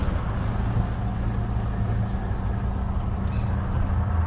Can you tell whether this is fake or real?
real